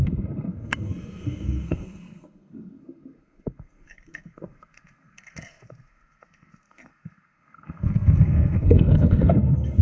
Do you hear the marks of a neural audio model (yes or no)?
yes